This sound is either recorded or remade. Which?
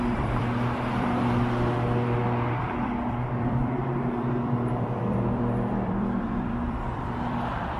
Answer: remade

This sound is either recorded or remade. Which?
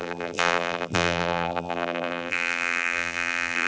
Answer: remade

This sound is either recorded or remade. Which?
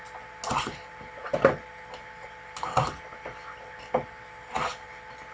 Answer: recorded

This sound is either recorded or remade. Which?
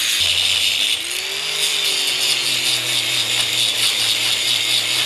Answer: recorded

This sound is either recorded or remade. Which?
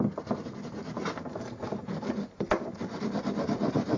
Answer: recorded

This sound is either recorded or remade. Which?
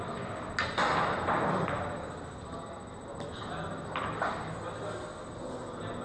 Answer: recorded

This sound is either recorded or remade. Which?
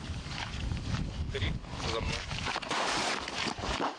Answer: remade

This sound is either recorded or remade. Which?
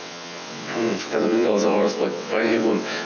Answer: remade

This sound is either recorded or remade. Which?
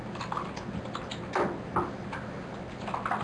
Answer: recorded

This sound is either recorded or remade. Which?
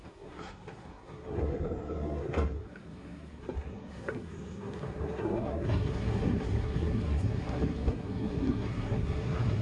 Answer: remade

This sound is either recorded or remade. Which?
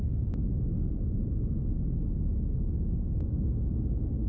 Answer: recorded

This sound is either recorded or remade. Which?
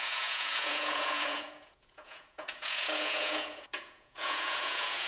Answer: remade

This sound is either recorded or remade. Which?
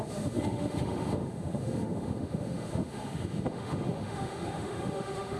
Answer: remade